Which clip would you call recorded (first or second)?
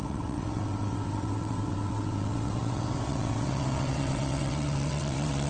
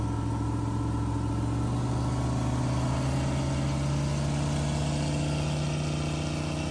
second